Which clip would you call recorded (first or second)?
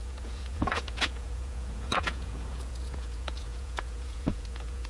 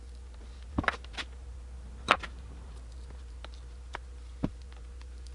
second